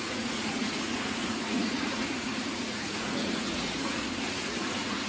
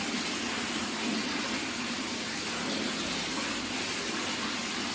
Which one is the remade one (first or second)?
first